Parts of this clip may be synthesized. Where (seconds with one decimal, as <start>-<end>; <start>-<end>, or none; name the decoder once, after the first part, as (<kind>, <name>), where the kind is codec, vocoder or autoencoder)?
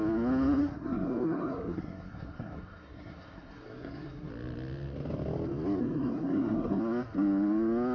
0.6-4.3 (codec, SNAC); 5.8-6.8